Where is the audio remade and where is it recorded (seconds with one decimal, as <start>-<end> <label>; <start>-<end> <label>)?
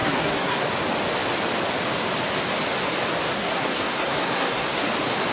0.0-0.7 remade; 0.7-3.3 recorded; 3.3-4.8 remade; 4.8-5.3 recorded